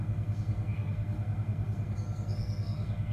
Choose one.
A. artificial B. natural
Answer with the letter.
A